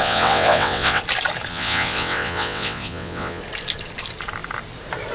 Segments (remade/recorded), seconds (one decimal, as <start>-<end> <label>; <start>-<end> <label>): 0.0-1.0 remade; 1.0-1.5 recorded; 1.5-3.4 remade; 3.4-5.1 recorded